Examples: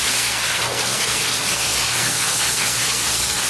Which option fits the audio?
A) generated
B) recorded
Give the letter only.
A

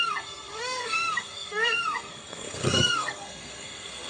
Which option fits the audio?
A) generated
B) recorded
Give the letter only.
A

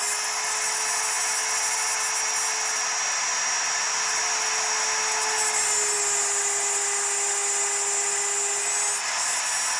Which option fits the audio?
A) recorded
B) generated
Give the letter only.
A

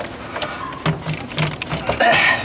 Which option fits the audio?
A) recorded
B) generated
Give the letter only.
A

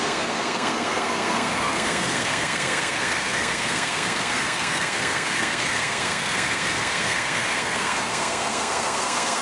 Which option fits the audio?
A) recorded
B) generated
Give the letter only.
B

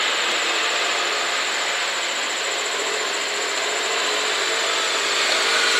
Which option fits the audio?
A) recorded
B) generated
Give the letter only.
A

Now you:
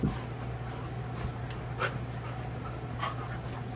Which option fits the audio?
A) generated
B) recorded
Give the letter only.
B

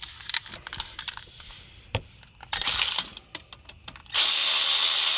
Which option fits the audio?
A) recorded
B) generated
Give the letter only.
A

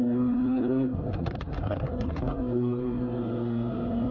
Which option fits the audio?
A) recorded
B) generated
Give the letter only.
B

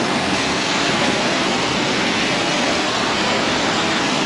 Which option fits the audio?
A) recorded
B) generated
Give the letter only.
B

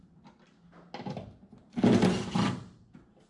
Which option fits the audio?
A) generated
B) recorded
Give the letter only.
B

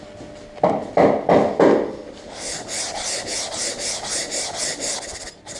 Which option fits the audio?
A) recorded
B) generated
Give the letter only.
A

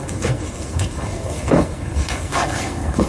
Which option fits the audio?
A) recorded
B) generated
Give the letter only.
B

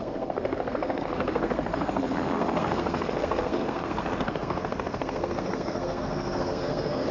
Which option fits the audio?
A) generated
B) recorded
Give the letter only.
A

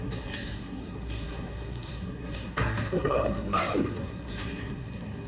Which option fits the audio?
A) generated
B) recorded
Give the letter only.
A